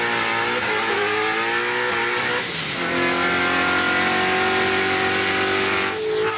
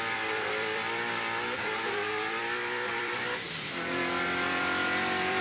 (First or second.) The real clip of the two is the first